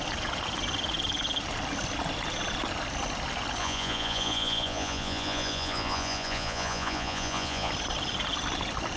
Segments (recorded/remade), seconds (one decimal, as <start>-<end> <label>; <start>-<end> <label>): 0.0-3.6 recorded; 3.6-7.7 remade; 7.7-9.0 recorded